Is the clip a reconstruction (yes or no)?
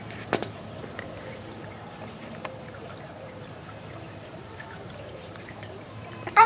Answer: yes